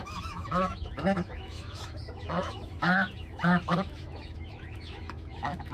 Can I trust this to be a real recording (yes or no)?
no